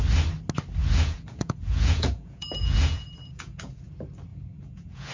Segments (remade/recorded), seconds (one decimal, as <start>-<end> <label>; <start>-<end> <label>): 0.0-0.8 recorded; 0.8-3.9 remade; 3.9-4.3 recorded; 4.3-5.1 remade